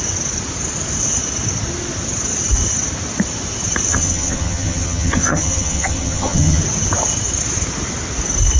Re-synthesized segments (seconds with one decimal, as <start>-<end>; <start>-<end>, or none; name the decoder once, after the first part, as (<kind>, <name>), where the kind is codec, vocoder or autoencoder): 3.9-6.6 (vocoder, HiFi-GAN)